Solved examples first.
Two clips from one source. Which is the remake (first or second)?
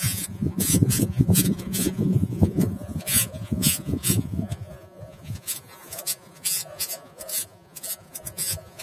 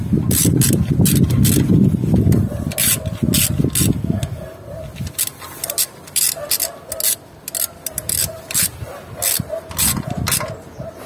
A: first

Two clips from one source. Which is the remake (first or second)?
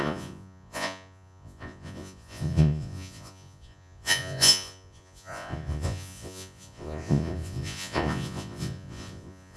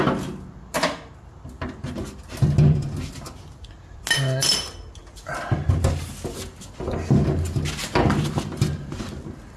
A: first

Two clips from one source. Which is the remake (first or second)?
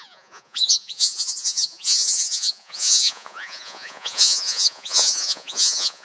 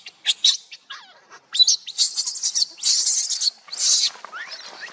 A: first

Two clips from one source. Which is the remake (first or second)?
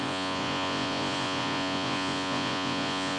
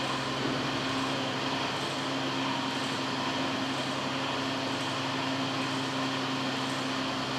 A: first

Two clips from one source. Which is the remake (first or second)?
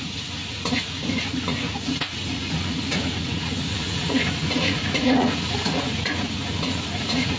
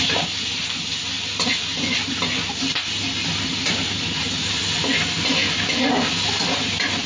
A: first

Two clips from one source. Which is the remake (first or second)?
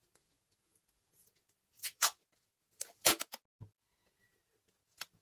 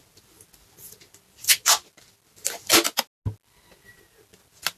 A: first